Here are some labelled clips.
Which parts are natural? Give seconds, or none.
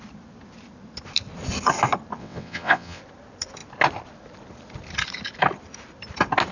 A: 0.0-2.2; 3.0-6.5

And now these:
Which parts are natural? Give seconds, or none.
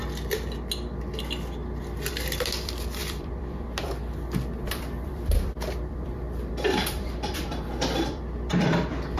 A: 0.0-2.1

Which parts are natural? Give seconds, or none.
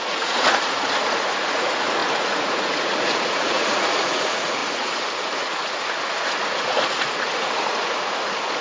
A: none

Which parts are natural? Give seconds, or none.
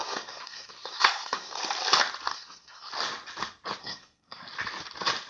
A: 1.6-2.3; 2.9-3.8; 4.4-5.3